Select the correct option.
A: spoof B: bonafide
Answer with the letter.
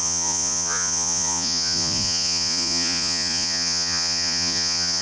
A